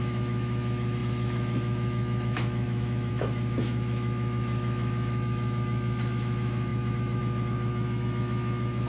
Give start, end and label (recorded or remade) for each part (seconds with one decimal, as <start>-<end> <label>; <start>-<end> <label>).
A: 0.0-8.9 remade